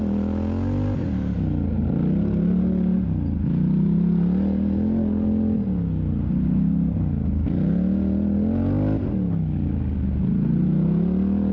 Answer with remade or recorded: recorded